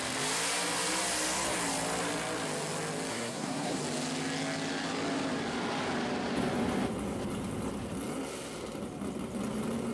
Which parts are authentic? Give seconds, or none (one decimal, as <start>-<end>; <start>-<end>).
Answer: 0.0-3.1; 3.8-9.9